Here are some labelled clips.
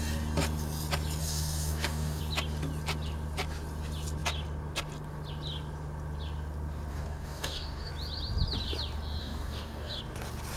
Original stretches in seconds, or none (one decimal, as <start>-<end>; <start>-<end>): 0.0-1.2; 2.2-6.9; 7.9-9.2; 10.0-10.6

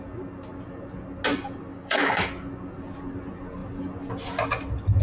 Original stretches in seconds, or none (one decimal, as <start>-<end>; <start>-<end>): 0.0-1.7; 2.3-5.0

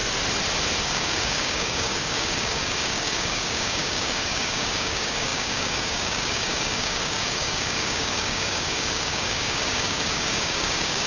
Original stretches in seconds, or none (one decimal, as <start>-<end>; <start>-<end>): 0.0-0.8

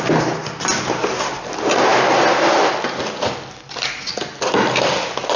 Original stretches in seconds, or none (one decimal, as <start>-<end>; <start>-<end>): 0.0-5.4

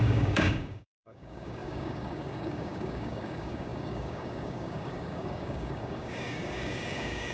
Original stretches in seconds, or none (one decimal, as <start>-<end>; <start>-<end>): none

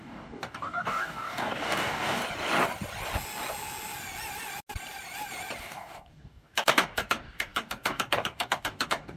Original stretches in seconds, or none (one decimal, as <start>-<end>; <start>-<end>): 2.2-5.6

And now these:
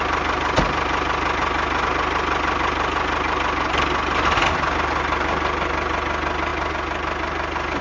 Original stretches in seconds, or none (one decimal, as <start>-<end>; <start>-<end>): 0.0-7.8

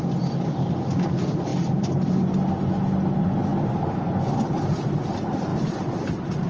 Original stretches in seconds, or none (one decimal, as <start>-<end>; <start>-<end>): 0.0-6.5